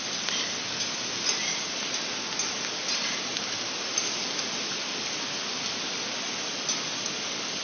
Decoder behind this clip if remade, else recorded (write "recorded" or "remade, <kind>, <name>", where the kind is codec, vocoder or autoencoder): recorded